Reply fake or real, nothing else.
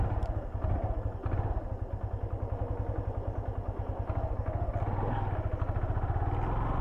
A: real